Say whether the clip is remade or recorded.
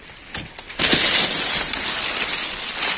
recorded